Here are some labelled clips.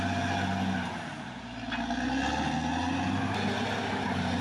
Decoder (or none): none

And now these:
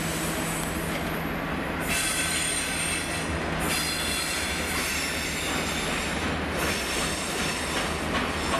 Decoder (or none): none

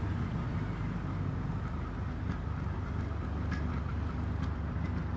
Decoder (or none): none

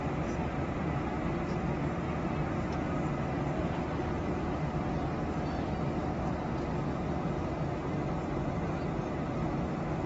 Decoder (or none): none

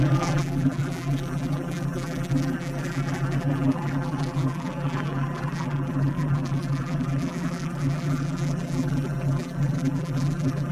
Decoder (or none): vocoder, BigVGAN v2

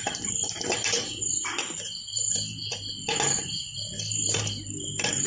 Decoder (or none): vocoder, BigVGAN v2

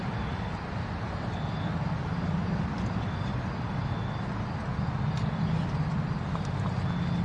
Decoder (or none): none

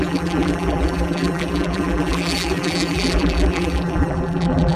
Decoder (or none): vocoder, BigVGAN v2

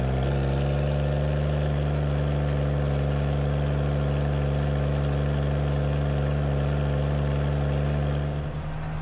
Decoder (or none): none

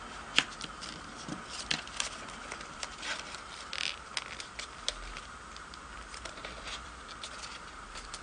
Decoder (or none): vocoder, BigVGAN v2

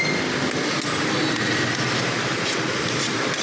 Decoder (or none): none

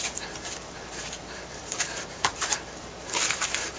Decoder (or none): vocoder, BigVGAN v2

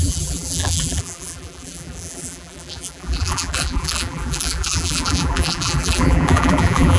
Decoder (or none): vocoder, BigVGAN v2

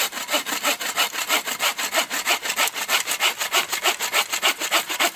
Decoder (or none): none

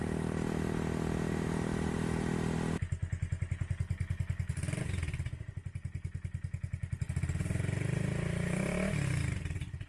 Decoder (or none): none